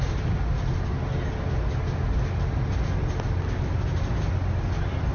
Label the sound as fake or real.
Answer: real